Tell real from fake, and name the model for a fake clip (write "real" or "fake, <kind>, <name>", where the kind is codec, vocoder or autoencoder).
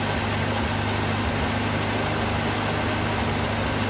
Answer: real